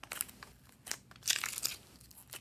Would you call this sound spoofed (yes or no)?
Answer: no